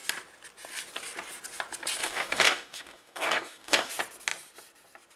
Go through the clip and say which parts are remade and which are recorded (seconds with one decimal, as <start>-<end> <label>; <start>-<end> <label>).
0.0-2.0 recorded; 2.0-3.9 remade; 3.9-5.2 recorded